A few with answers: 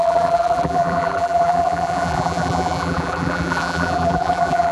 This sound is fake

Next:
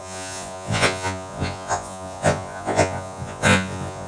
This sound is fake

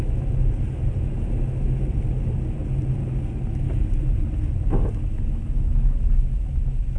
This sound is real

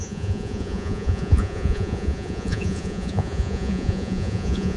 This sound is fake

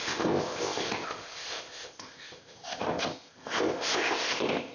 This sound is fake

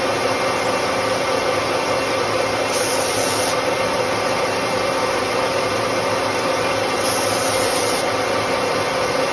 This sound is real